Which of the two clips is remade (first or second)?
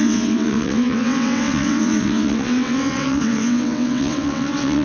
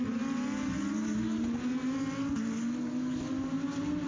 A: first